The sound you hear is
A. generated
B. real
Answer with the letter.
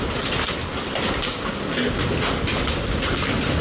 B